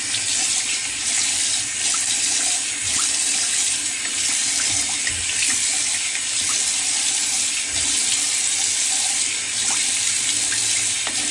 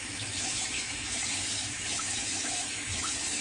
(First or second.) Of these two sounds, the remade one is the second